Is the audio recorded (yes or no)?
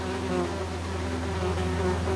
yes